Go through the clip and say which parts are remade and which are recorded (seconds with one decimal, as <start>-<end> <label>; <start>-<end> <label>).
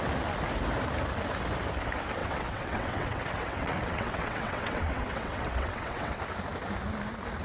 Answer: 0.0-2.2 recorded; 2.2-6.2 remade; 6.2-7.4 recorded